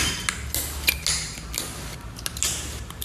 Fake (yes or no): no